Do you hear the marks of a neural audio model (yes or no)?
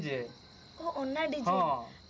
no